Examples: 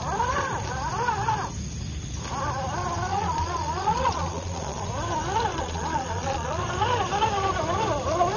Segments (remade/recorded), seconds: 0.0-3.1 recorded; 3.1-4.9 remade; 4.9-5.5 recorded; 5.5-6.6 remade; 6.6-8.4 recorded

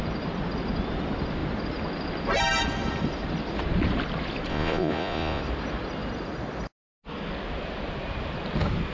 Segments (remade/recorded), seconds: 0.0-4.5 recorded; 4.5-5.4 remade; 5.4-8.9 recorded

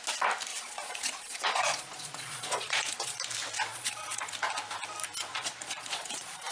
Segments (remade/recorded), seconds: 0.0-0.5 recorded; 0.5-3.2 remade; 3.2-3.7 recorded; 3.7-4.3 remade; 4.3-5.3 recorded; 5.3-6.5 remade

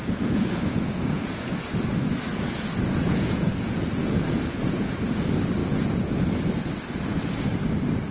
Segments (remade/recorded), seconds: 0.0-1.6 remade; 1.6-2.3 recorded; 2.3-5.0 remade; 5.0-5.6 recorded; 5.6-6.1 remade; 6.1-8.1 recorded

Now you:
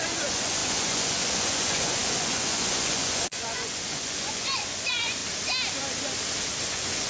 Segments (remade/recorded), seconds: 0.0-5.2 remade; 5.2-6.6 recorded; 6.6-7.1 remade

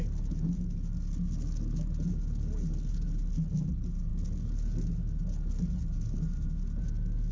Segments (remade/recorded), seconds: 0.0-7.3 recorded

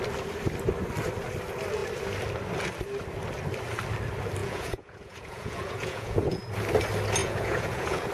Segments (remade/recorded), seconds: 0.0-4.4 recorded; 4.4-6.4 remade; 6.4-7.2 recorded; 7.2-8.1 remade

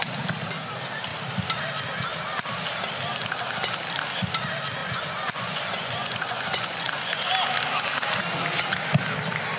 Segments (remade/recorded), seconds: 0.0-4.8 recorded; 4.8-7.3 remade; 7.3-9.6 recorded